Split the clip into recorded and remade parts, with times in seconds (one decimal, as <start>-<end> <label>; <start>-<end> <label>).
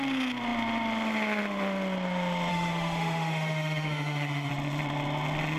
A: 0.0-2.5 recorded; 2.5-4.5 remade; 4.5-5.6 recorded